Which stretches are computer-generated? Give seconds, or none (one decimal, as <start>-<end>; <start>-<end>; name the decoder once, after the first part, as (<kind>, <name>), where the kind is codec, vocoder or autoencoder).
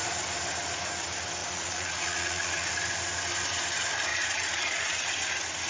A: 1.4-2.7 (vocoder, Vocos); 4.1-5.1